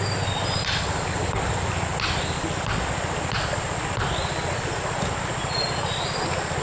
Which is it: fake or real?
real